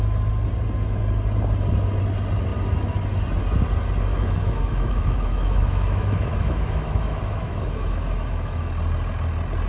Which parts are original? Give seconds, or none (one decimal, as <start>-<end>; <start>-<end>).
0.0-4.1; 8.7-9.7